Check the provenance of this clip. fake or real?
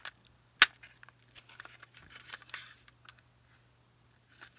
real